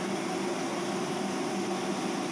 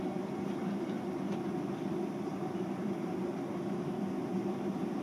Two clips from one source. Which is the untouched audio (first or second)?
first